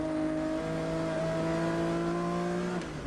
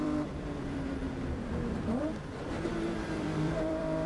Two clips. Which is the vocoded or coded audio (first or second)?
second